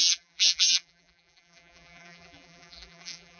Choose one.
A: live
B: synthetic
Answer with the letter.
B